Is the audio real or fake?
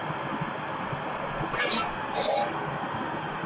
real